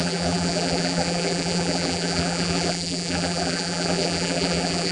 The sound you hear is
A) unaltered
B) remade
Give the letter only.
B